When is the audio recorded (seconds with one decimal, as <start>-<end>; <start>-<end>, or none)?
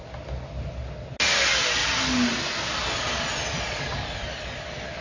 0.0-5.0